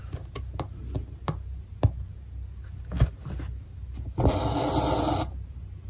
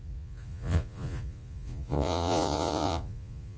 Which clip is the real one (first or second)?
first